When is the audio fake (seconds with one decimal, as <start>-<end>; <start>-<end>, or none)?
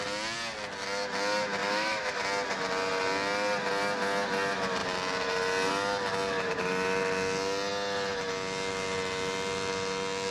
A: 1.6-2.2